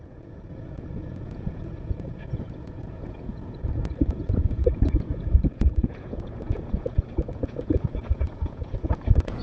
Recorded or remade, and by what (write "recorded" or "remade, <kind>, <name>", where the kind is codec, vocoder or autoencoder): remade, vocoder, Vocos